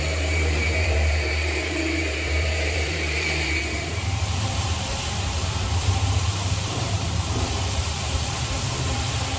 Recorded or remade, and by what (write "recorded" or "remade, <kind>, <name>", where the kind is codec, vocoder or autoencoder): remade, vocoder, BigVGAN v2